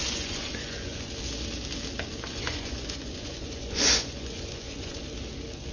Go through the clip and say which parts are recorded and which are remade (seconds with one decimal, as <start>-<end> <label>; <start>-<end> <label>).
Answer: 0.0-1.1 remade; 1.1-2.3 recorded; 2.3-5.0 remade; 5.0-5.7 recorded